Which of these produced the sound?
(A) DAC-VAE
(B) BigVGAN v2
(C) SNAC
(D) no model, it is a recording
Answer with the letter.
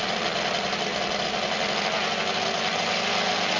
D